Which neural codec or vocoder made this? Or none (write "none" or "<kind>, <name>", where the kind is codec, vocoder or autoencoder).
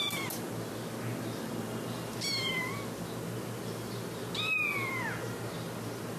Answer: none